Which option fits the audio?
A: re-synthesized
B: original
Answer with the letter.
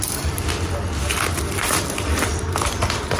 B